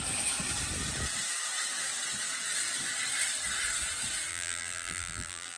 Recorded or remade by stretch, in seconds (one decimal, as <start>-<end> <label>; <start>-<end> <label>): 0.0-4.3 recorded; 4.3-5.6 remade